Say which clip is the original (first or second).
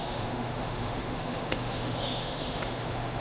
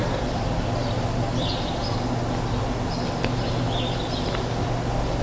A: second